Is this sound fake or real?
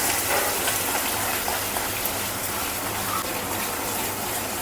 real